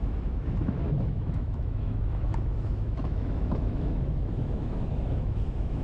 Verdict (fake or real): fake